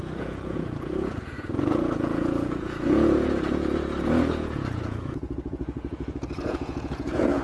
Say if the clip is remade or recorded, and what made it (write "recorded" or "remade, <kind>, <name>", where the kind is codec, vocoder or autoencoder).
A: remade, vocoder, Vocos